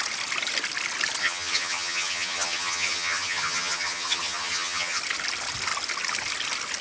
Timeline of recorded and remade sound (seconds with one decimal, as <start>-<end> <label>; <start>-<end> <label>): 0.0-1.2 recorded; 1.2-5.0 remade; 5.0-6.8 recorded